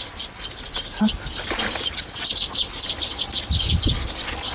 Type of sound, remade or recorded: recorded